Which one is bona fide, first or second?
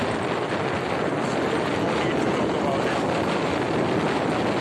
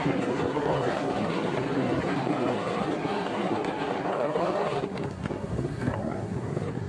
first